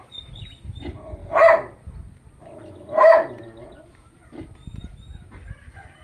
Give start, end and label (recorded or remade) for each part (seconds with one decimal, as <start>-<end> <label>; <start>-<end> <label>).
0.0-6.0 recorded